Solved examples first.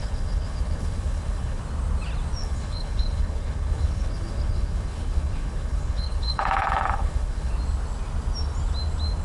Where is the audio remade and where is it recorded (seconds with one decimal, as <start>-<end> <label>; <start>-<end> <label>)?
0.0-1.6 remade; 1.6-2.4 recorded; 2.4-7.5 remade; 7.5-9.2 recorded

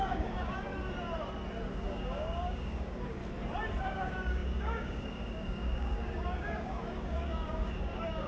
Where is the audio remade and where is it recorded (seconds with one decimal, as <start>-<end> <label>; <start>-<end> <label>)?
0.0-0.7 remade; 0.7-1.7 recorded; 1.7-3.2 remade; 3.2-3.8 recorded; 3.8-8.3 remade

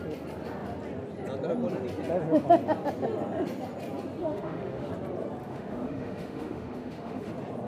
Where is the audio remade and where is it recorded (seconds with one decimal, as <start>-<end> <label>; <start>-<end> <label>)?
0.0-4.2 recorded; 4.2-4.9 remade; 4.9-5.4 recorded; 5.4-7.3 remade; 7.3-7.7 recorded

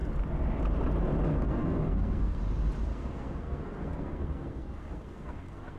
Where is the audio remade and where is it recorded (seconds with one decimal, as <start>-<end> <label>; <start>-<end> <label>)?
0.0-1.3 recorded; 1.3-2.4 remade; 2.4-2.9 recorded; 2.9-5.8 remade

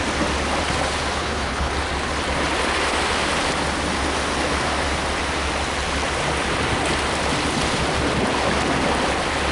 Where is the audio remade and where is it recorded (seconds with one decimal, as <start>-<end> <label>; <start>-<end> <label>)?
0.0-1.2 recorded; 1.2-1.7 remade; 1.7-9.5 recorded